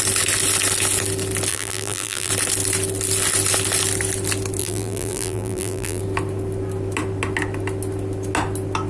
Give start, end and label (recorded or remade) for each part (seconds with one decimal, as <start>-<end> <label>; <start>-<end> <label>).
0.0-1.5 recorded; 1.5-2.3 remade; 2.3-4.6 recorded; 4.6-6.0 remade; 6.0-8.9 recorded